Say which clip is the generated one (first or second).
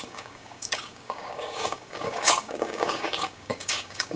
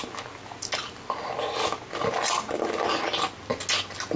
first